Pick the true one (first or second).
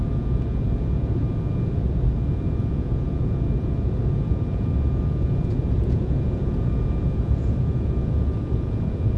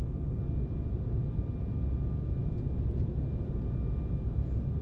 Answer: second